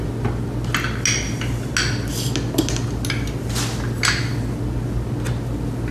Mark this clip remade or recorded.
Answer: recorded